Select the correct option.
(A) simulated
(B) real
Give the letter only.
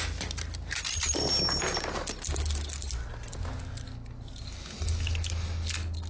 B